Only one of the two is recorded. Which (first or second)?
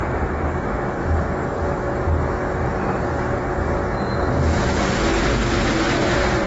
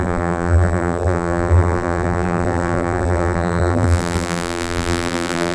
first